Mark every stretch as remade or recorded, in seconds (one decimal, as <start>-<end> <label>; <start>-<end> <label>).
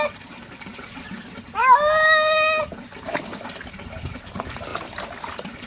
0.0-5.7 recorded